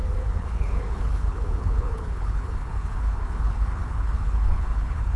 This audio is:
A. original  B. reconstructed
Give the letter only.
B